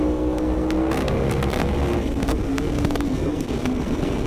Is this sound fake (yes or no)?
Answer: yes